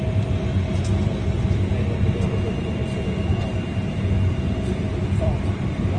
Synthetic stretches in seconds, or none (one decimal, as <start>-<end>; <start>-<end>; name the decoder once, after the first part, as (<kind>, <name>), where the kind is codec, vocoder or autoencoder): none